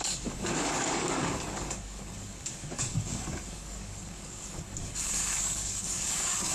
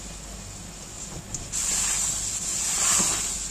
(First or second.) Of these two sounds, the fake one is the first